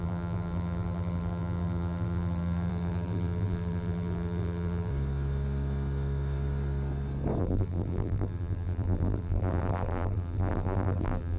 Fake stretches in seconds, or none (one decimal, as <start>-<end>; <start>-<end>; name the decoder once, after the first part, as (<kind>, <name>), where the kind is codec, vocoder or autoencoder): 0.0-4.9 (vocoder, BigVGAN v2); 7.4-11.4